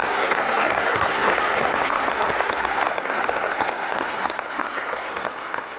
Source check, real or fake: fake